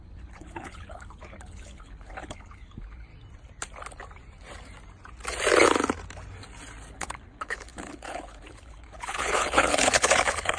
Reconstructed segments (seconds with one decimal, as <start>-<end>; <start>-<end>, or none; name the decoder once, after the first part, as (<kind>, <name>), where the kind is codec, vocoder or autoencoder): 0.0-3.1 (codec, HILCodec); 6.9-10.6